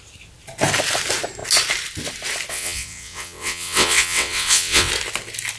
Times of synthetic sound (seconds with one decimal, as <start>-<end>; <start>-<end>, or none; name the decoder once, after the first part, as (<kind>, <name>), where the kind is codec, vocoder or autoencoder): 2.5-4.9 (vocoder, WaveNeXt)